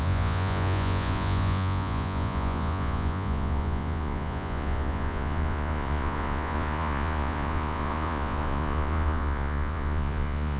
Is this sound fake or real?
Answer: fake